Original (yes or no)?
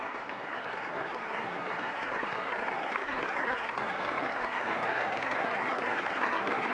no